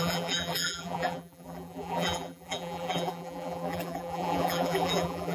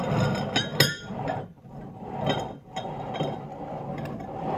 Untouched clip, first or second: second